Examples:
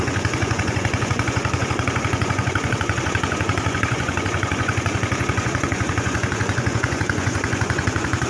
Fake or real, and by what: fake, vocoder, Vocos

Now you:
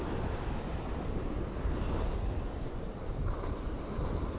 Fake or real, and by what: real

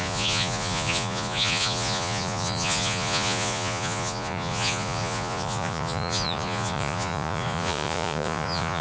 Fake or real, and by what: fake, vocoder, Vocos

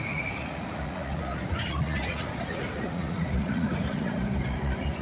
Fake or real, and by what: fake, vocoder, Vocos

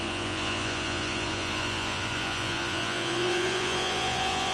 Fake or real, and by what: fake, vocoder, Vocos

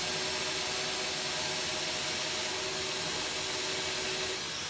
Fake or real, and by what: real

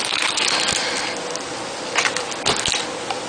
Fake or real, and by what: real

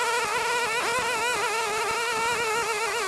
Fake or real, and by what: real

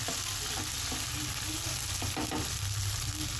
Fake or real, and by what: real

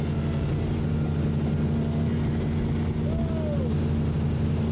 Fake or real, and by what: real